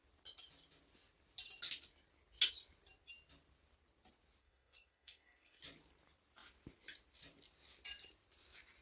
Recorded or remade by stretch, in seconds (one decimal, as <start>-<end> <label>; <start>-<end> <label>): 0.0-4.4 recorded; 4.4-5.6 remade; 5.6-8.8 recorded